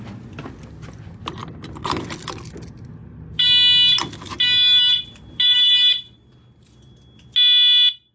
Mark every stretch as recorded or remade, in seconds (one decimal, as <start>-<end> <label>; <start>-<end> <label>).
0.0-8.1 recorded